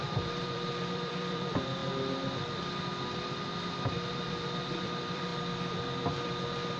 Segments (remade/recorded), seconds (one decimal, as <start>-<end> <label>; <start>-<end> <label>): 0.0-1.8 remade; 1.8-4.1 recorded; 4.1-5.3 remade; 5.3-6.8 recorded